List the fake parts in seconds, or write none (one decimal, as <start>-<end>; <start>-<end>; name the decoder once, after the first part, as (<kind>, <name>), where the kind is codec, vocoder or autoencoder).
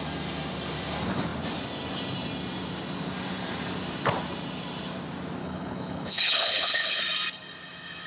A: 5.4-7.0 (codec, HILCodec)